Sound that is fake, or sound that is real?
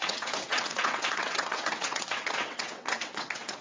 fake